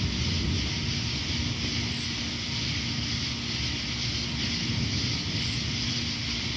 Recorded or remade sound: recorded